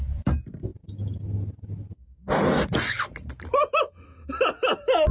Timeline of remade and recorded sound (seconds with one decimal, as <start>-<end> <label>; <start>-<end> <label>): 0.0-5.1 recorded